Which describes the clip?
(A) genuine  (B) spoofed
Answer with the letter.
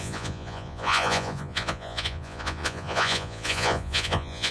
B